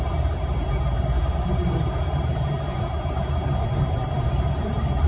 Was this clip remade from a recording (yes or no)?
yes